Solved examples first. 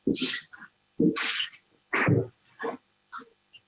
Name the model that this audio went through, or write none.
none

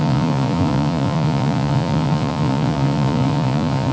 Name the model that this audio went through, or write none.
vocoder, Vocos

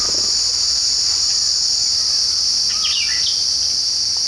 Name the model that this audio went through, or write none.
none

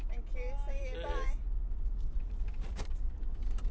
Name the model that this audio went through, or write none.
none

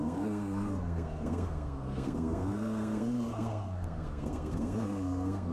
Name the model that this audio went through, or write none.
codec, SNAC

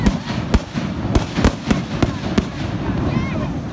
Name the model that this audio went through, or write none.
none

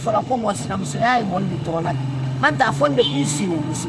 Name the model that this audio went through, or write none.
autoencoder, DAC-VAE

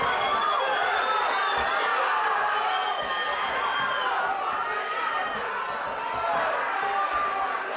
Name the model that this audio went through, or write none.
none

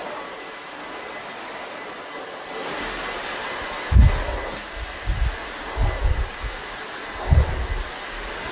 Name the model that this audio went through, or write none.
none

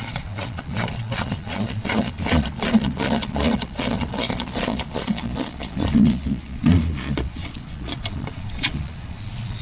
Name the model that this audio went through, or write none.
vocoder, Vocos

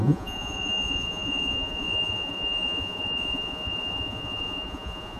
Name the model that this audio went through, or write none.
vocoder, Vocos